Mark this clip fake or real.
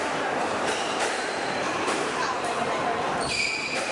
fake